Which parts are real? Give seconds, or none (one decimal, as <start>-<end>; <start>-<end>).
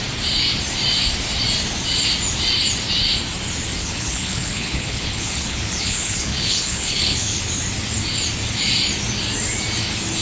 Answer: 0.0-3.8; 7.4-10.2